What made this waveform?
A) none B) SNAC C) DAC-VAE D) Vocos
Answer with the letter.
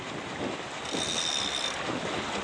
A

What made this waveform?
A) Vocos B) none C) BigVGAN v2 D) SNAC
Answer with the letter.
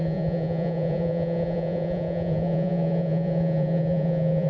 A